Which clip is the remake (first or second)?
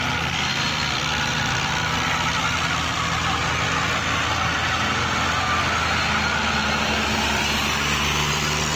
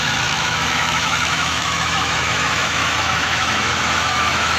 second